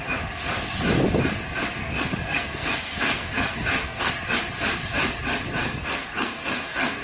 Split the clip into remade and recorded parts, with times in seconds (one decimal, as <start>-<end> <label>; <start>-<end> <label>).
0.0-1.8 recorded; 1.8-4.1 remade; 4.1-5.6 recorded; 5.6-7.0 remade